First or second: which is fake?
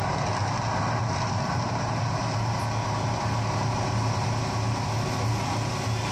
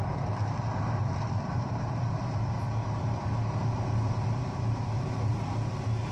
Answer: second